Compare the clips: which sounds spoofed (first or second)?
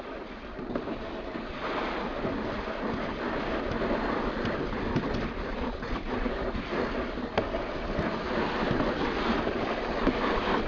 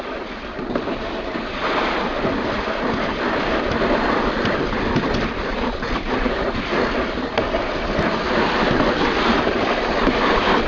second